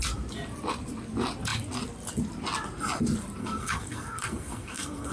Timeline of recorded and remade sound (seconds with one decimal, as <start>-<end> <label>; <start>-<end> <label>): 0.0-3.4 recorded; 3.4-5.1 remade